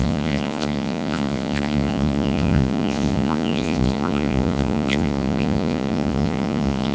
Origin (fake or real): fake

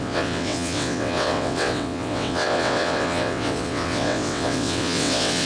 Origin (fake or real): fake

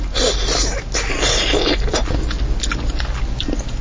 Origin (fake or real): real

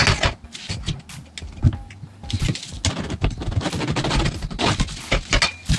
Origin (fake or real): real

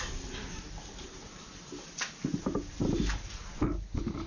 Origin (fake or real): real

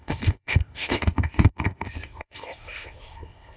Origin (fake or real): fake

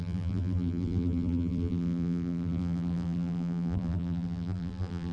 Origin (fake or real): fake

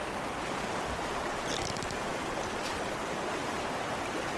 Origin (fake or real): real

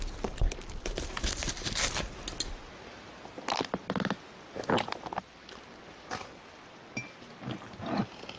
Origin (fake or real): real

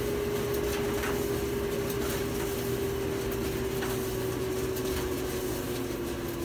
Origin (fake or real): real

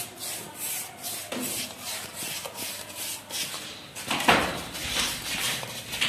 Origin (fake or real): real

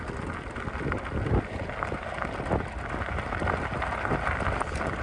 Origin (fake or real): real